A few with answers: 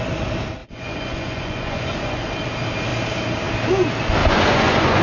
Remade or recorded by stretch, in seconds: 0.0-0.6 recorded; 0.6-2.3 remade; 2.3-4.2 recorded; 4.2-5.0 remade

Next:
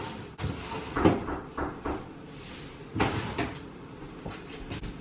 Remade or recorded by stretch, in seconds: 0.0-5.0 recorded